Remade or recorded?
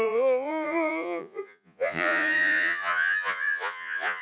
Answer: remade